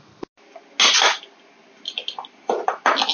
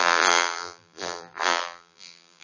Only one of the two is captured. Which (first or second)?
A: first